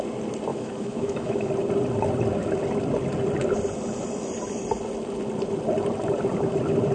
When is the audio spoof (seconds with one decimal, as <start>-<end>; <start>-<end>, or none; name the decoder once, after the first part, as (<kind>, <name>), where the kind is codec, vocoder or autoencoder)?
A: 0.5-1.5 (autoencoder, DAC-VAE)